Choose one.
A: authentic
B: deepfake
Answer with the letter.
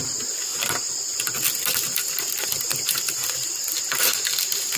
A